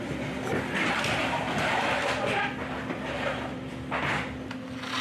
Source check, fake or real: real